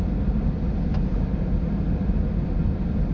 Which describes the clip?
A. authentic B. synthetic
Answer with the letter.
A